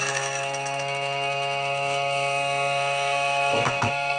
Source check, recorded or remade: remade